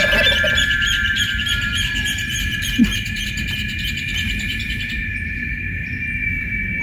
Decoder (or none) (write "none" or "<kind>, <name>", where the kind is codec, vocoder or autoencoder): vocoder, BigVGAN v2